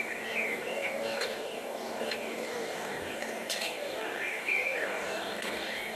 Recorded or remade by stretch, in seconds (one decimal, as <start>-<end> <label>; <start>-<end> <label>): 0.0-6.0 remade